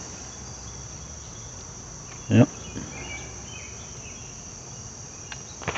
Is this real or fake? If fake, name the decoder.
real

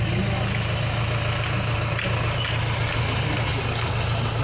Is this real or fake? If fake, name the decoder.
real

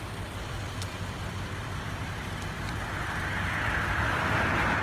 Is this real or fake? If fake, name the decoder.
real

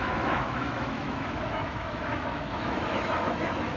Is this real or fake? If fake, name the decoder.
fake, autoencoder, DAC-VAE